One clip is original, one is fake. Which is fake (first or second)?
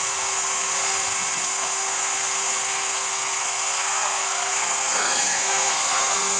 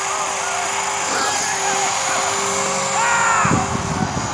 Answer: first